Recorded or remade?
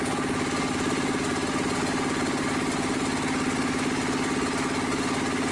recorded